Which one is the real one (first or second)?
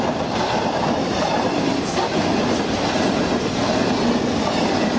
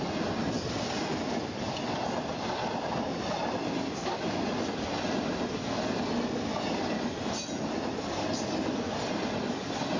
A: second